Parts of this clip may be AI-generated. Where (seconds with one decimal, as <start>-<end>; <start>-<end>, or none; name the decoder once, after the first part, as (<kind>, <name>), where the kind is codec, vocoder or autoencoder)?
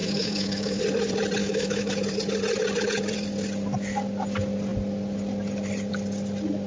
0.0-0.8 (autoencoder, DAC-VAE); 1.4-1.9